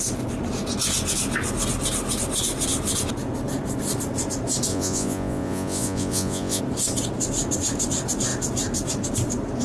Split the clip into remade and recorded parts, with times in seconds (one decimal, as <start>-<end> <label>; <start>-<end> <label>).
0.0-4.7 recorded; 4.7-6.6 remade; 6.6-9.6 recorded